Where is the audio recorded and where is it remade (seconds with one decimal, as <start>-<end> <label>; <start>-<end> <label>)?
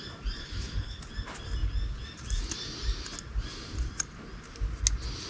0.0-0.4 recorded; 0.4-1.0 remade; 1.0-5.3 recorded